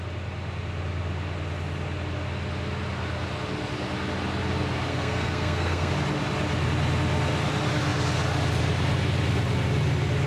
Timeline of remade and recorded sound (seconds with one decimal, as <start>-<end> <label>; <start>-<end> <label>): 0.0-4.9 recorded; 4.9-5.9 remade; 5.9-10.3 recorded